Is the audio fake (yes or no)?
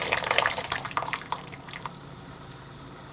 yes